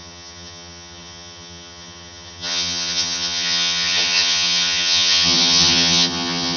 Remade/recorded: remade